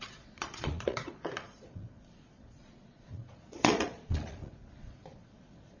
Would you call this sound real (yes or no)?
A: no